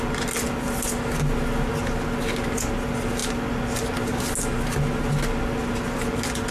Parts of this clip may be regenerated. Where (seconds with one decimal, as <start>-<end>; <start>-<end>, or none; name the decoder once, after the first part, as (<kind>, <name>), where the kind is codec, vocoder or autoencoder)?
none